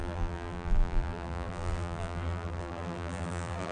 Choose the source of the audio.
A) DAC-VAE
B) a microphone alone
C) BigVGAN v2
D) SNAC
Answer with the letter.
C